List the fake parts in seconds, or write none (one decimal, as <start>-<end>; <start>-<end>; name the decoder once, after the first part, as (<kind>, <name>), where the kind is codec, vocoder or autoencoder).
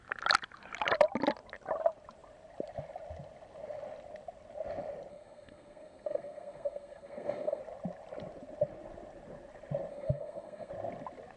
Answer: 5.1-7.6 (codec, SNAC); 9.9-10.7